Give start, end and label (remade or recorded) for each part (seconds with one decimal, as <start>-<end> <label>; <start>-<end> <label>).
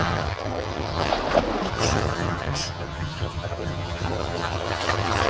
0.0-1.1 remade; 1.1-1.7 recorded; 1.7-5.3 remade